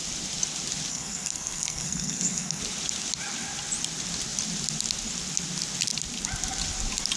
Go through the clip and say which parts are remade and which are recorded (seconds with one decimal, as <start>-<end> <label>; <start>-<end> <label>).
0.0-0.9 recorded; 0.9-2.6 remade; 2.6-7.2 recorded

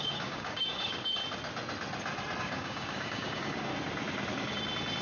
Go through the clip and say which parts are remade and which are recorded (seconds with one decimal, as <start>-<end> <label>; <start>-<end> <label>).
0.0-1.2 remade; 1.2-2.4 recorded; 2.4-3.7 remade; 3.7-5.0 recorded